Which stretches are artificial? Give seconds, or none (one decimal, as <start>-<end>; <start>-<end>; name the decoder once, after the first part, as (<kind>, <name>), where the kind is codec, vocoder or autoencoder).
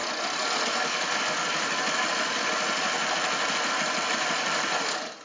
none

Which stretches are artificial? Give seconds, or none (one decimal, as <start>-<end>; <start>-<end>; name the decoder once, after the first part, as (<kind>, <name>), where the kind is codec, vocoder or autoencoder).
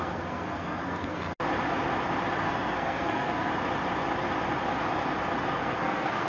0.0-1.3 (codec, SNAC); 2.4-3.5; 5.5-6.3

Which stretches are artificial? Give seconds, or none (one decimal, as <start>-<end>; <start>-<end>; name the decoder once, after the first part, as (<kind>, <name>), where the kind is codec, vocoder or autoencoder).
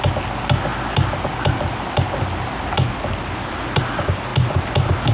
none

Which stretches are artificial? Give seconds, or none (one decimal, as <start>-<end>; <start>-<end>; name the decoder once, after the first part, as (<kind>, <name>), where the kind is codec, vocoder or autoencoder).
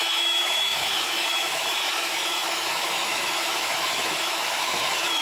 0.0-5.2 (autoencoder, DAC-VAE)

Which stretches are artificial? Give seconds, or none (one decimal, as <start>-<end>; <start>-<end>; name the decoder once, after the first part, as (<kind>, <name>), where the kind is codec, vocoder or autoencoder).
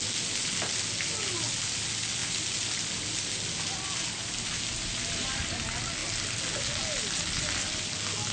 none